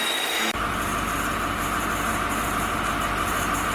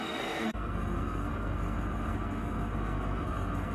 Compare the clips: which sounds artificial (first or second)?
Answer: second